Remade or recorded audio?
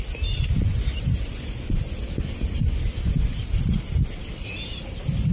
recorded